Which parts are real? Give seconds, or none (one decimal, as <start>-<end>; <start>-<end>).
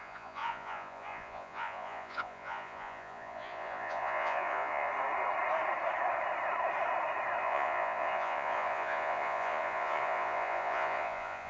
4.9-7.4